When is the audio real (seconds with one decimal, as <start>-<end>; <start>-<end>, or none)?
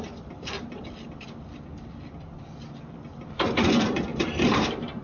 0.0-4.1